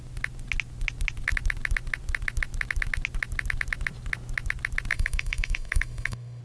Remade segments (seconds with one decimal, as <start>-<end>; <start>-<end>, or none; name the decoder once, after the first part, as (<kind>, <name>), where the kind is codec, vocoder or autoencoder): 4.9-6.4 (autoencoder, DAC-VAE)